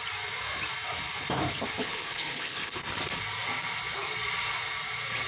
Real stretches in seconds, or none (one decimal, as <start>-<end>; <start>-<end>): 0.0-1.8; 2.8-5.3